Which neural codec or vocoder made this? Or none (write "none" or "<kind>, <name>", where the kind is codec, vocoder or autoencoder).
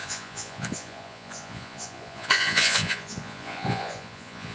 vocoder, Vocos